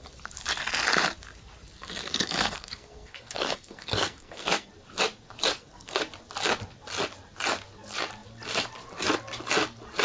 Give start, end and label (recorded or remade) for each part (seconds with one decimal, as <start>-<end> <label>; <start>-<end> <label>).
0.0-1.8 recorded; 1.8-4.7 remade; 4.7-5.5 recorded; 5.5-6.0 remade; 6.0-10.0 recorded